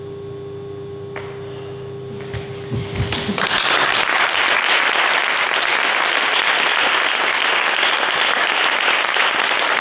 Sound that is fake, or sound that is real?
real